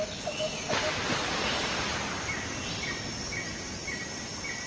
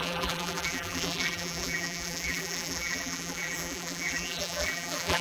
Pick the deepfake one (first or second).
second